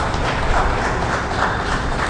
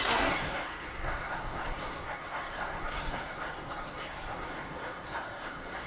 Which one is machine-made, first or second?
second